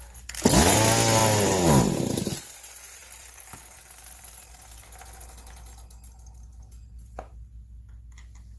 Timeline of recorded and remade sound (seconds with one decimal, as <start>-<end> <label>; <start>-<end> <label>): 0.0-1.2 recorded; 1.2-4.5 remade; 4.5-8.6 recorded